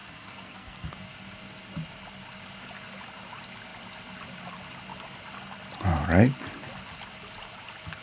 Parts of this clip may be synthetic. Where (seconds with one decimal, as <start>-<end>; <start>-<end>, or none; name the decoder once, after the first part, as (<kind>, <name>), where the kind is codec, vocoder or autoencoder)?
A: 0.0-0.9 (codec, SNAC)